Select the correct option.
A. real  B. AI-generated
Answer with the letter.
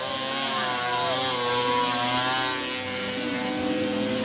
A